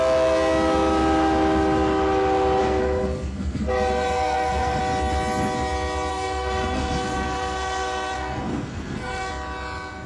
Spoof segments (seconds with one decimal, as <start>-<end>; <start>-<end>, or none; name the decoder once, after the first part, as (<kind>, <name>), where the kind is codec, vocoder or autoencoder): 2.6-4.8 (codec, SNAC); 6.1-9.3